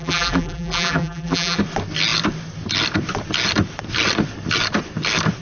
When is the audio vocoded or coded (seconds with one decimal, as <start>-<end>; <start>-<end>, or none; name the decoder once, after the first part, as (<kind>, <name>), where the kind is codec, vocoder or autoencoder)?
0.0-1.6 (vocoder, BigVGAN v2)